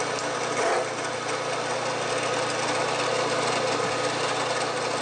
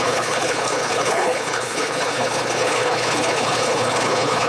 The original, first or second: first